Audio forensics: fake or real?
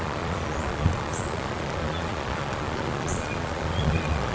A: fake